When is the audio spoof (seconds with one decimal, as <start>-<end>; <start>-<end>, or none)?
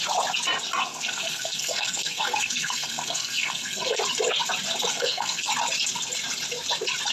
0.8-4.0; 4.9-5.5